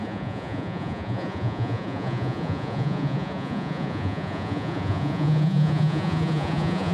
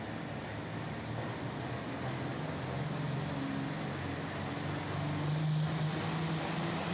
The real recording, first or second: second